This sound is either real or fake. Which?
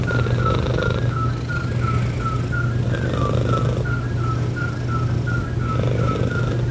real